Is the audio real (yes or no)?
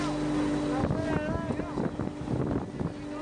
yes